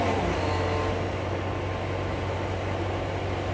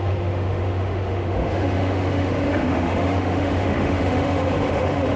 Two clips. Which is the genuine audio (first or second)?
first